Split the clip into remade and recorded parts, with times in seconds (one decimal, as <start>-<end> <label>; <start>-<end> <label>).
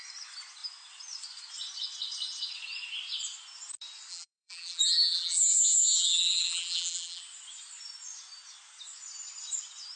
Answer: 0.0-4.1 recorded; 4.1-7.2 remade; 7.2-10.0 recorded